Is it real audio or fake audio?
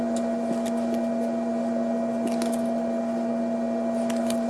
real